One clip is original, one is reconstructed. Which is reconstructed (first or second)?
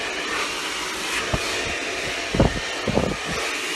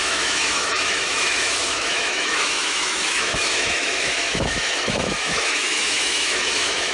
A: second